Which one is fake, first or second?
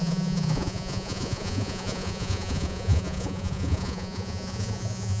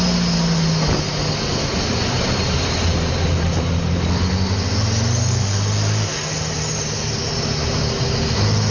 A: first